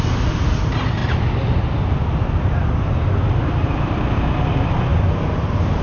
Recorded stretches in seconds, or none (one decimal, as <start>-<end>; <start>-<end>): 0.0-5.8